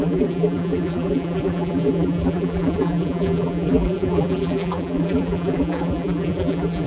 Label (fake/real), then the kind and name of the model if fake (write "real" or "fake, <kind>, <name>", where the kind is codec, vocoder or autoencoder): fake, vocoder, BigVGAN v2